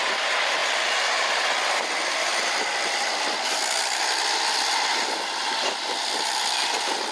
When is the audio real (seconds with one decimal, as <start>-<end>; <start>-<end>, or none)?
0.0-0.6; 1.9-2.3; 6.6-7.1